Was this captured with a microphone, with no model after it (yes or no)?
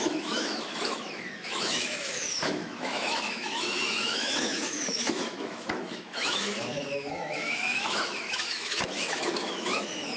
no